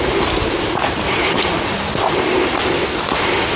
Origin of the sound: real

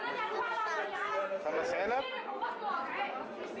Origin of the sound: real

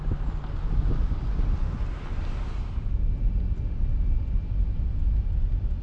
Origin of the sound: real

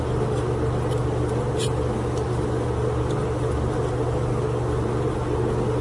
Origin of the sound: real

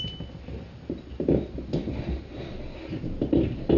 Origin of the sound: real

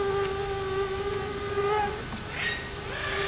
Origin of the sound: real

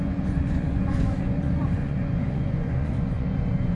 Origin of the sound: fake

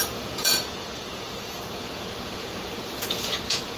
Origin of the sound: fake